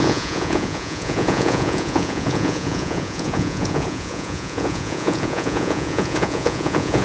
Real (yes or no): no